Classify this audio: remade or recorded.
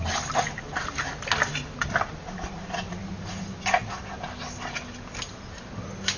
recorded